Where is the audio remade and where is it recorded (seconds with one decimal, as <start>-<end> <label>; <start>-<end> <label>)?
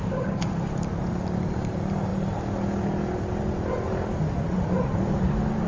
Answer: 0.0-0.5 remade; 0.5-5.7 recorded